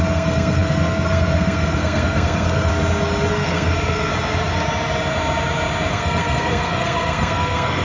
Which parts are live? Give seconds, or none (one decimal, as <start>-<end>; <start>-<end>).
2.7-3.3; 4.1-5.9